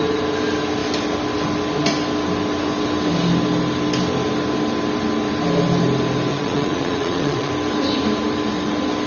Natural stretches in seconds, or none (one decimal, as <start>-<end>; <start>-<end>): 0.0-6.3; 7.5-9.1